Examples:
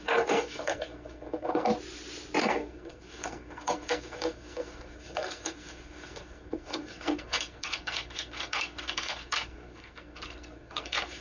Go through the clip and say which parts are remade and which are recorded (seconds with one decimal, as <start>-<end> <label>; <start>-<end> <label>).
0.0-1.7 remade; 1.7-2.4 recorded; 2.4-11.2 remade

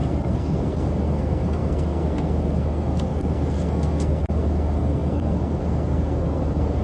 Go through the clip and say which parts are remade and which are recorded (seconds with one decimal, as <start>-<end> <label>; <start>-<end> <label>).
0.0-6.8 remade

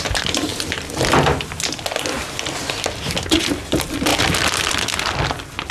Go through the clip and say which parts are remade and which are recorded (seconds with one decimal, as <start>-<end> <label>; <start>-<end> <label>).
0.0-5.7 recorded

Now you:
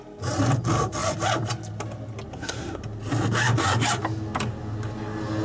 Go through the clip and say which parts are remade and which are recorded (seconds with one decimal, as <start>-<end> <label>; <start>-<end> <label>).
0.0-2.3 recorded; 2.3-2.8 remade; 2.8-5.4 recorded

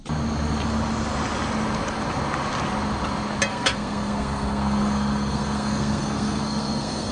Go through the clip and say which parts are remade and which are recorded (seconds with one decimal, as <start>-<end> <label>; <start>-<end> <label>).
0.0-3.5 recorded; 3.5-7.1 remade

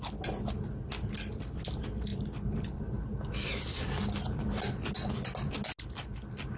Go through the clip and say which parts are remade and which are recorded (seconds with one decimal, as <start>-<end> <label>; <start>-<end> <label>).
0.0-6.6 recorded

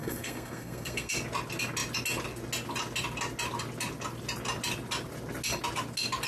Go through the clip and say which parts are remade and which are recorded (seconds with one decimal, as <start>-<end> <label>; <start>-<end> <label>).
0.0-1.1 remade; 1.1-6.3 recorded

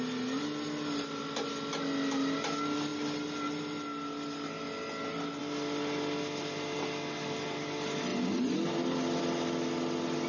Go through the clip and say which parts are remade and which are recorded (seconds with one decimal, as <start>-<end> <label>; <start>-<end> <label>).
0.0-10.3 recorded